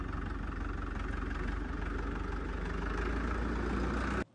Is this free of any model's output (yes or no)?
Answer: yes